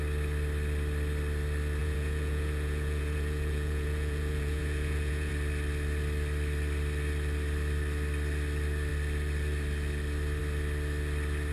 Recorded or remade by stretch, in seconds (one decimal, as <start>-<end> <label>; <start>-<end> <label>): 0.0-1.8 recorded; 1.8-5.3 remade; 5.3-11.5 recorded